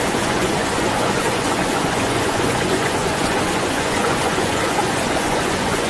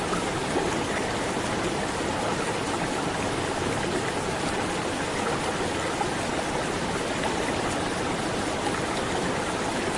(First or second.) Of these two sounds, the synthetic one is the first